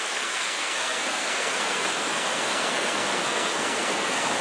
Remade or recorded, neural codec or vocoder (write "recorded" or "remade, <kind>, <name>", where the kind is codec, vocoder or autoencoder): remade, codec, SNAC